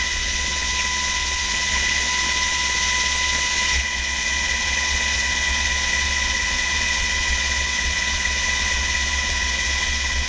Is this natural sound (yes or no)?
no